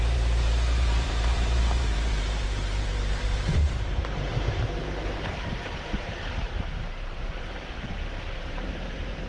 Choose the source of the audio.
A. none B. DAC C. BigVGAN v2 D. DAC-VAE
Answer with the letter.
C